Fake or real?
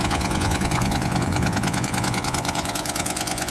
fake